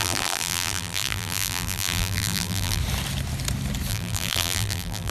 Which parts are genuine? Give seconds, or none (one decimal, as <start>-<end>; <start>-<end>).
2.8-3.9